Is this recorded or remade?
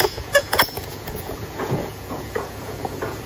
remade